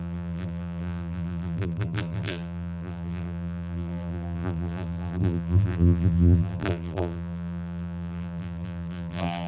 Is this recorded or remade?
remade